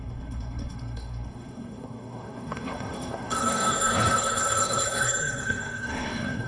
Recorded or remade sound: remade